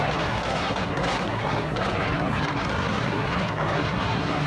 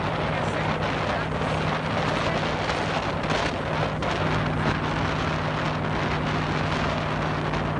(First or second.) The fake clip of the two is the first